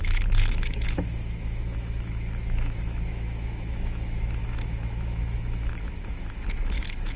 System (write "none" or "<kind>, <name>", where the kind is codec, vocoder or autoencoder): autoencoder, DAC-VAE